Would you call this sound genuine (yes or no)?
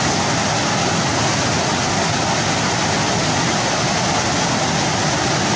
yes